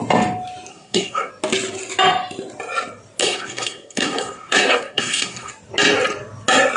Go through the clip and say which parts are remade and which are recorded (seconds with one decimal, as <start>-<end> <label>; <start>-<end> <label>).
0.0-0.7 recorded; 0.7-1.3 remade; 1.3-3.2 recorded; 3.2-5.5 remade; 5.5-6.8 recorded